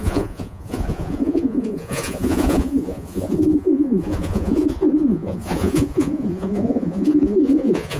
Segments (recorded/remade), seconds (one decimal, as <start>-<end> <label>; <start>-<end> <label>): 0.0-8.0 remade